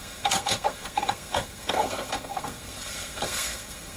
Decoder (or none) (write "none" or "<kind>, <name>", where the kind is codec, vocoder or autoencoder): codec, SNAC